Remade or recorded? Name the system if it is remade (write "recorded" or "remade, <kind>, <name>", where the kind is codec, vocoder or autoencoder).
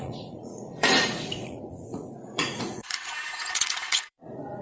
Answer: remade, vocoder, Vocos